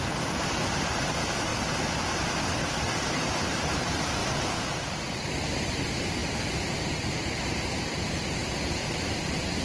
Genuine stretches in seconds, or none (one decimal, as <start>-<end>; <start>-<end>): 1.5-2.6; 4.2-4.7